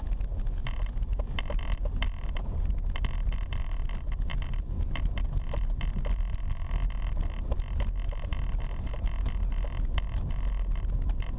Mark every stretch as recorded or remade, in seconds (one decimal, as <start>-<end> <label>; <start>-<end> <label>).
0.0-11.4 recorded